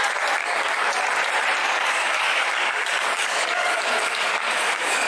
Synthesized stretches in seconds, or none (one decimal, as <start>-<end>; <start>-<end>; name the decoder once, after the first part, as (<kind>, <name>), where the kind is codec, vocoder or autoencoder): 0.4-0.9 (codec, DAC); 1.6-5.1